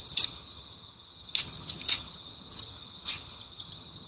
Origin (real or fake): fake